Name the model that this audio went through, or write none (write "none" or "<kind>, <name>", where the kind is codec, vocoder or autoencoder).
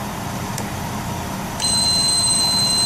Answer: vocoder, BigVGAN v2